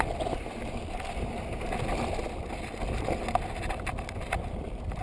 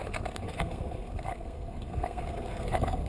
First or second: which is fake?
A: second